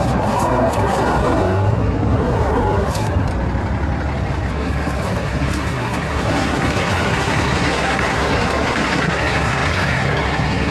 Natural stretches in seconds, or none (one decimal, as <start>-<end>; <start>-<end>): 3.3-4.5

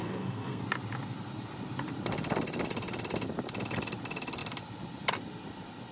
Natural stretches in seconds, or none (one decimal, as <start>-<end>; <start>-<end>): 0.6-5.9

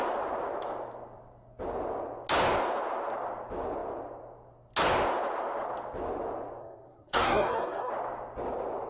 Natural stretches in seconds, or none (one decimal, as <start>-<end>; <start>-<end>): 0.0-6.6; 7.9-8.9

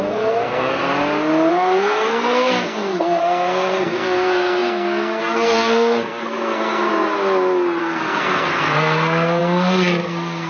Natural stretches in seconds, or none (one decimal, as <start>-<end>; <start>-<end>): 0.8-1.5; 6.9-7.8